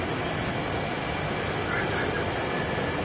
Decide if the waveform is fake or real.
real